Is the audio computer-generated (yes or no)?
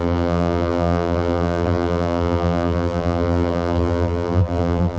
yes